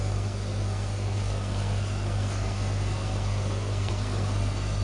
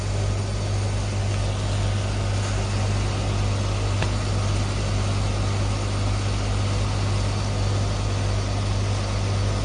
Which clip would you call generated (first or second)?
first